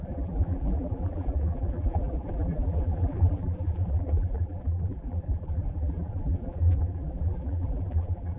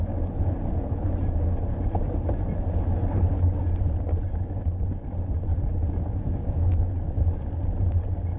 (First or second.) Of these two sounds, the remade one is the first